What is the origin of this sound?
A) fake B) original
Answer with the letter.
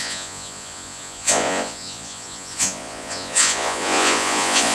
A